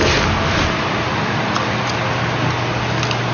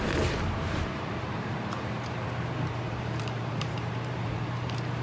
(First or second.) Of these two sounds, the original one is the first